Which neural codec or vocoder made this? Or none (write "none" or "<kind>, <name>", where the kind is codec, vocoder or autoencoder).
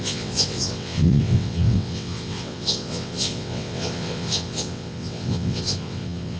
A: vocoder, WaveNeXt